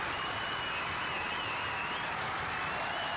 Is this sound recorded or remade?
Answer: recorded